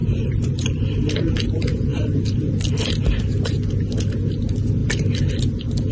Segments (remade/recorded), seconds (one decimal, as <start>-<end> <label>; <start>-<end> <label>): 0.0-0.8 remade; 0.8-1.9 recorded; 1.9-2.5 remade; 2.5-4.8 recorded; 4.8-5.3 remade; 5.3-5.9 recorded